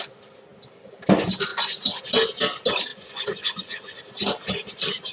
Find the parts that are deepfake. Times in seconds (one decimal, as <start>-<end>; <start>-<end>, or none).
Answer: 2.9-4.0